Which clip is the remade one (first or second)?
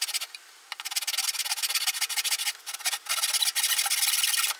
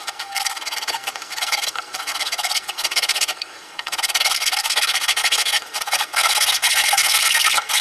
second